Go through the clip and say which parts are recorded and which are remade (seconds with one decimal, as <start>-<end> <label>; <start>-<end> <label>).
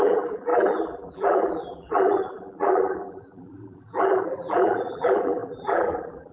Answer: 0.0-6.3 remade